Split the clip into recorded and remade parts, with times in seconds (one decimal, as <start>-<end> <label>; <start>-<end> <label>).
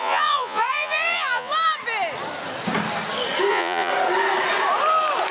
0.0-1.5 remade; 1.5-3.5 recorded; 3.5-3.9 remade; 3.9-5.3 recorded